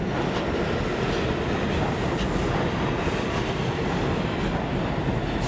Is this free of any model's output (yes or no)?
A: yes